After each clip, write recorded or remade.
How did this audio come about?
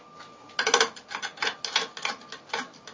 recorded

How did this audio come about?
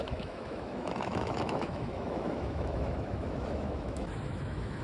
remade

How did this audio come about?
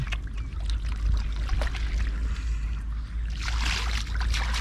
recorded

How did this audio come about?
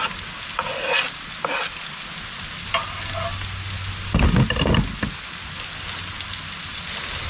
recorded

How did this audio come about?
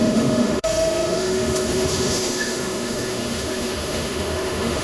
remade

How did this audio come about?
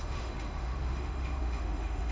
remade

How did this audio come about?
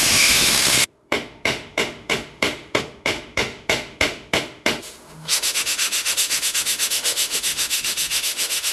remade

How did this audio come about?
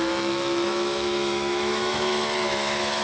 remade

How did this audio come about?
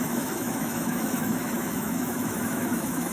remade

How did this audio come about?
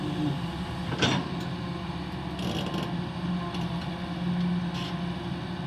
recorded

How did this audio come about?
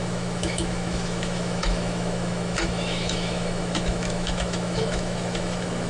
remade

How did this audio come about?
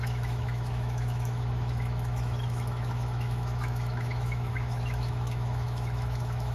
remade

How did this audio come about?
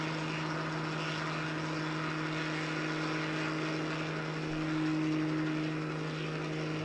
recorded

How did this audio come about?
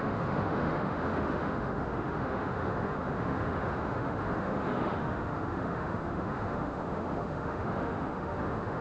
remade